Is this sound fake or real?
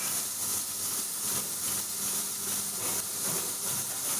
real